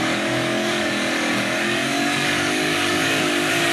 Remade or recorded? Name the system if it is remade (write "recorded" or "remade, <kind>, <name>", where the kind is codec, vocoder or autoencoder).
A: remade, codec, DAC